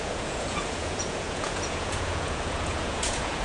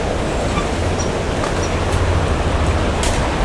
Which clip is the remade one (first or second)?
first